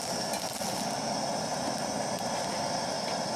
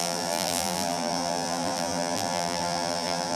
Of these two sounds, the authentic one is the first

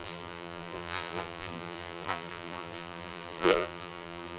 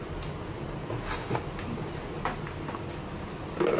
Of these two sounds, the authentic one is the second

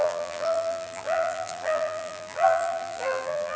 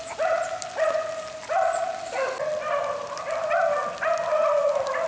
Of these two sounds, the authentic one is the second